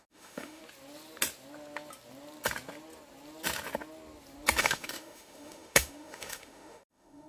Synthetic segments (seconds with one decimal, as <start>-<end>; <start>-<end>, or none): 0.0-0.6; 4.6-7.3